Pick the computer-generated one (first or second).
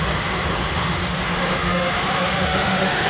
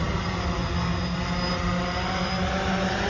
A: first